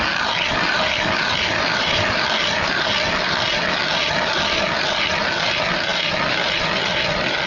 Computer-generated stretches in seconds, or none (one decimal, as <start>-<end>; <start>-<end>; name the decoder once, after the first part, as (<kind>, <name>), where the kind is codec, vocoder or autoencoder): none